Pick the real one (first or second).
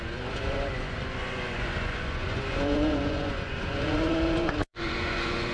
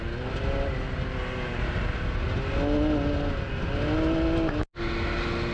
second